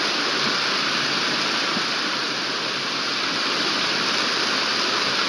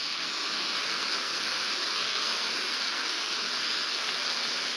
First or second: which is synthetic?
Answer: second